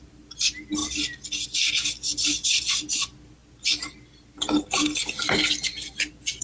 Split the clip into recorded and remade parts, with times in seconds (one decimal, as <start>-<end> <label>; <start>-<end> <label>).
0.0-6.4 recorded